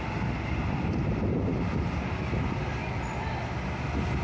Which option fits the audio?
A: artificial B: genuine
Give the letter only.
B